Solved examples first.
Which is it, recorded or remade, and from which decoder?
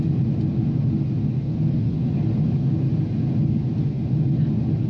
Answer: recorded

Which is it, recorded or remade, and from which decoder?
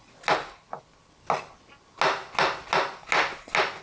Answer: recorded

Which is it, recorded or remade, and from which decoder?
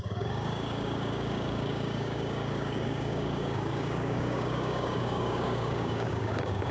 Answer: remade, codec, DAC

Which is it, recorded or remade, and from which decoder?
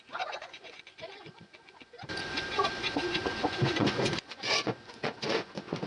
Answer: remade, vocoder, Vocos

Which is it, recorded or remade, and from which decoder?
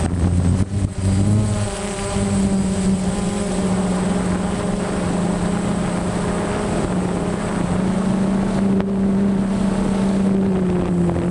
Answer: recorded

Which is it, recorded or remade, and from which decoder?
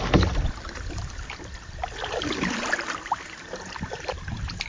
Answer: recorded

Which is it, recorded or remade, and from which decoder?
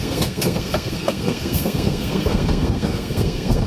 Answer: remade, codec, SNAC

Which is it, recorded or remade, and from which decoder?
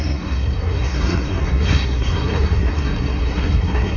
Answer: remade, codec, SNAC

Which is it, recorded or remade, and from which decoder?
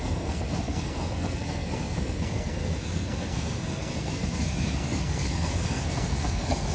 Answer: remade, codec, SNAC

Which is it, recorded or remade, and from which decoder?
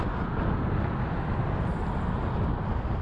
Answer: recorded